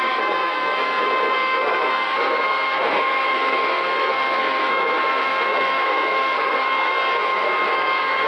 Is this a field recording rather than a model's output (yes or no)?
no